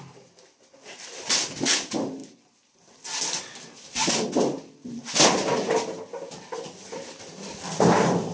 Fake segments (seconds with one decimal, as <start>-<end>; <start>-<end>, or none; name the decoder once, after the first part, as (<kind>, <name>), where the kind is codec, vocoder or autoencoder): none